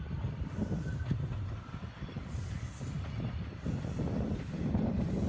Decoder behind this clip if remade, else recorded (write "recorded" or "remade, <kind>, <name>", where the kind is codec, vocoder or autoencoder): recorded